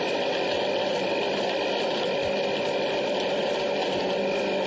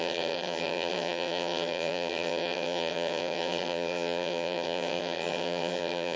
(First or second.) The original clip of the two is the first